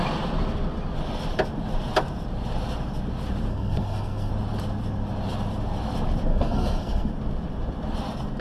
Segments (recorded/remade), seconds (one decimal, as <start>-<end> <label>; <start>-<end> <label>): 0.0-3.5 recorded; 3.5-4.3 remade; 4.3-6.3 recorded; 6.3-7.1 remade; 7.1-8.4 recorded